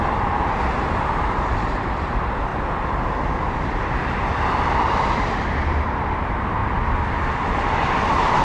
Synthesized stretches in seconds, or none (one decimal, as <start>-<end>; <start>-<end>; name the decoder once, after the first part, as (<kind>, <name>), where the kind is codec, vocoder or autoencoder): 0.0-2.5 (vocoder, BigVGAN v2); 4.9-6.6; 7.3-8.4